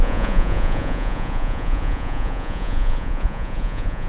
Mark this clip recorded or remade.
remade